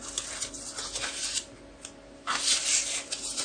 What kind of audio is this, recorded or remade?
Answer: recorded